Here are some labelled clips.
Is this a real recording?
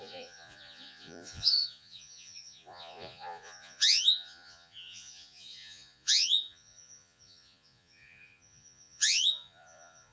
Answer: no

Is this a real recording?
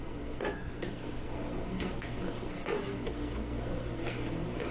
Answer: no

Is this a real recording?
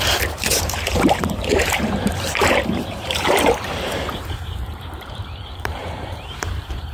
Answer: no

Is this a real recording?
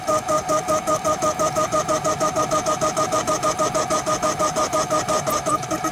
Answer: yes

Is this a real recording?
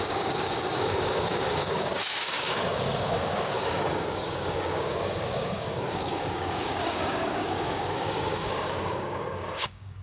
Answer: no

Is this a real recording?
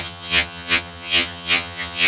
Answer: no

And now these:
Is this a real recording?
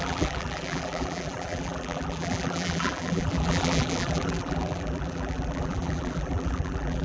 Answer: no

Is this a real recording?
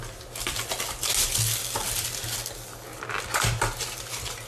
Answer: yes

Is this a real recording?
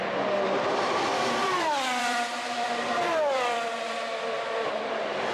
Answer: no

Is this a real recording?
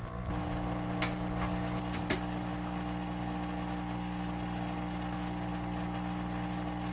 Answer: yes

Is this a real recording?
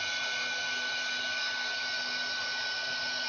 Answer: yes